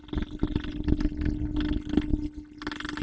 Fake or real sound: real